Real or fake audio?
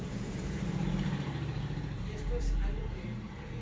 fake